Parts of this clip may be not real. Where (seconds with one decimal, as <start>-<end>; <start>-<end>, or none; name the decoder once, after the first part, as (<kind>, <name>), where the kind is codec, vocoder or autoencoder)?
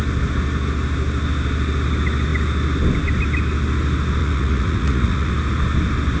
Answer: 4.2-5.3 (vocoder, Vocos)